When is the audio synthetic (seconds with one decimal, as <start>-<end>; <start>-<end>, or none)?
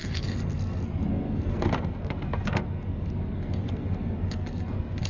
0.0-5.1